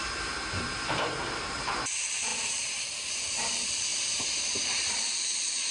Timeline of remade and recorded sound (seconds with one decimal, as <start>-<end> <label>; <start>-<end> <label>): 0.0-5.7 remade